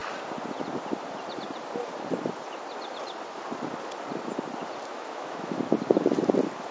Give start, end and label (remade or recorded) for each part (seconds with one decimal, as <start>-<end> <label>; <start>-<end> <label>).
0.0-4.9 recorded; 4.9-5.6 remade; 5.6-6.7 recorded